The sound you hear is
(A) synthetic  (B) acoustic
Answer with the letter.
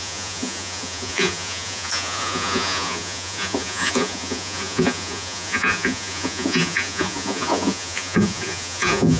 A